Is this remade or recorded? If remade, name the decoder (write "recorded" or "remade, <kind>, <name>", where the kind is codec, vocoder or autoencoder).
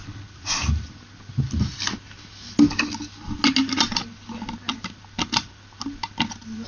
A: recorded